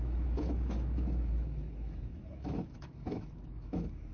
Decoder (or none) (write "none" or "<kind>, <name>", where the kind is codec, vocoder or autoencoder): autoencoder, DAC-VAE